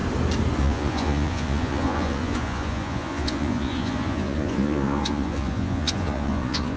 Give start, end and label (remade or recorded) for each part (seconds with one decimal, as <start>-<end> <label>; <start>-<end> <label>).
0.0-0.6 recorded; 0.6-6.8 remade